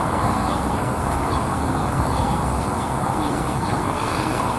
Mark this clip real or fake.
fake